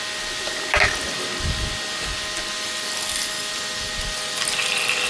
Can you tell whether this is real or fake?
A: real